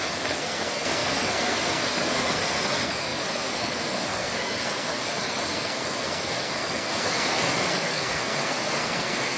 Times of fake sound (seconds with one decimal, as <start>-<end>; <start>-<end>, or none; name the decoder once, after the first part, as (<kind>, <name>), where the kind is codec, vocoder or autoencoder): 0.0-9.4 (codec, SNAC)